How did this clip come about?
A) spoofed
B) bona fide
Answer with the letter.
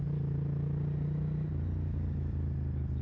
B